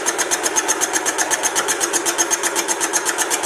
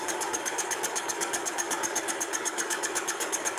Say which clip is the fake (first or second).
second